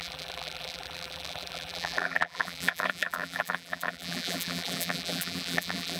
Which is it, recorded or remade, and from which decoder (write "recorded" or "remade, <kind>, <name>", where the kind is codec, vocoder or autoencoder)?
remade, vocoder, BigVGAN v2